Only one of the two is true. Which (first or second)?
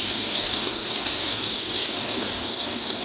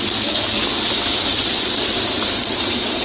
second